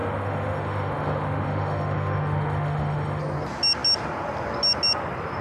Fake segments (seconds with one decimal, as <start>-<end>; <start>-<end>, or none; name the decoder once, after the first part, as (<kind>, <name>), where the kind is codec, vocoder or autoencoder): 0.0-3.2 (autoencoder, DAC-VAE)